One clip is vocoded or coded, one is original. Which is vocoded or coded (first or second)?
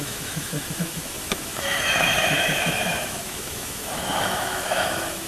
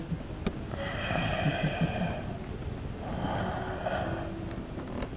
first